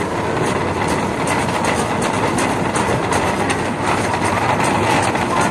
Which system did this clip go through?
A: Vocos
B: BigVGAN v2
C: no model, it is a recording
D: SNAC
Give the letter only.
C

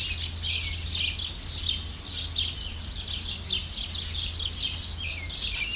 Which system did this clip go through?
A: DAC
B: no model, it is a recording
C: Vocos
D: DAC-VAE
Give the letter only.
B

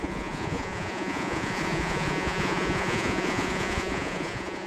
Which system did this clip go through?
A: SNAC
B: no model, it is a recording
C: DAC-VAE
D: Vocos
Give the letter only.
D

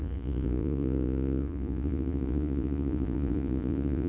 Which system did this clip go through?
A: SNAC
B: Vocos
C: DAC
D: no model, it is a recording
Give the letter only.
B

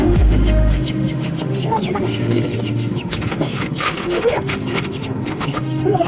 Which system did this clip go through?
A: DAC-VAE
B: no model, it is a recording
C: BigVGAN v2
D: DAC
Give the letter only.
A